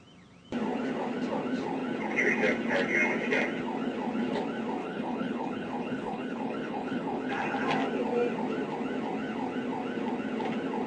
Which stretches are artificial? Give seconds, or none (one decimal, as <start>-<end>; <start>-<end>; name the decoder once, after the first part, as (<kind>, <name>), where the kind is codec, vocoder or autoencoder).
4.8-7.3 (codec, HILCodec)